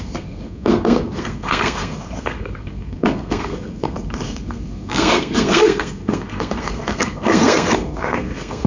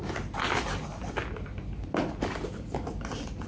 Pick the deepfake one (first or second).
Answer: first